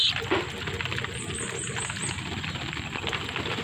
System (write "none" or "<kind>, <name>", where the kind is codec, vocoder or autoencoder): none